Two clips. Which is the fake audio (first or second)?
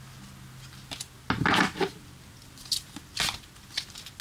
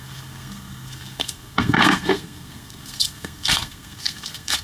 second